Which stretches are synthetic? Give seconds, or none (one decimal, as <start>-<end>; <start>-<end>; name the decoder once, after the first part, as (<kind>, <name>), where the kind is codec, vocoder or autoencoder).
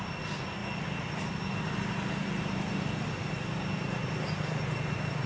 none